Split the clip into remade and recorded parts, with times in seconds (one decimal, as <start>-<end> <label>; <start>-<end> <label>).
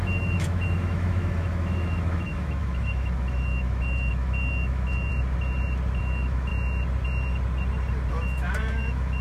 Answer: 0.0-5.1 remade; 5.1-6.0 recorded; 6.0-6.5 remade; 6.5-8.1 recorded; 8.1-9.2 remade